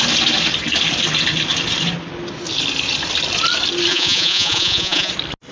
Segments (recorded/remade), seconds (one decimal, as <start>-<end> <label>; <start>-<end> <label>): 0.0-3.9 recorded; 3.9-5.1 remade; 5.1-5.5 recorded